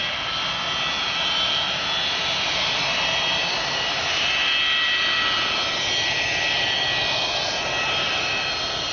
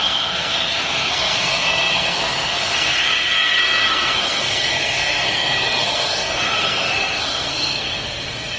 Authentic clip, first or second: first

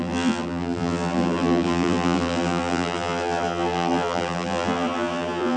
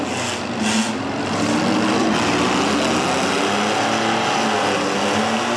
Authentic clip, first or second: second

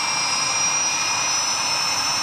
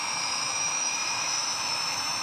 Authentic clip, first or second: first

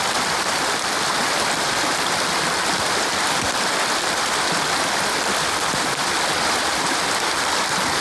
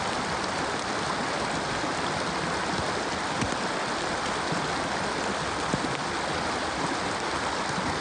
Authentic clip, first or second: second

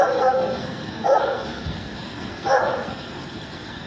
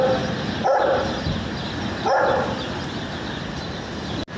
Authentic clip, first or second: second